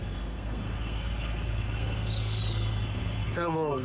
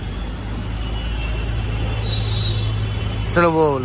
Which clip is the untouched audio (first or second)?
second